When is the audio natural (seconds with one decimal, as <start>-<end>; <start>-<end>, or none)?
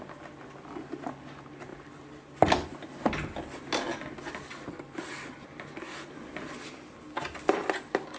0.0-8.2